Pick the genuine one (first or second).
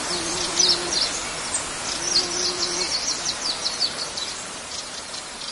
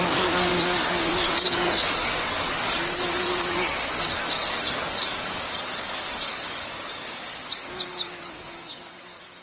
first